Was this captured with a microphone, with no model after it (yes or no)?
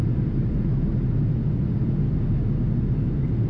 yes